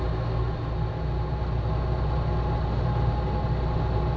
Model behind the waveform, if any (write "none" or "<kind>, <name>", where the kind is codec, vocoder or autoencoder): none